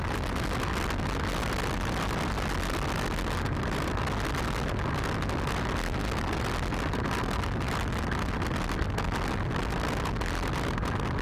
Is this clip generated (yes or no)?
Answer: no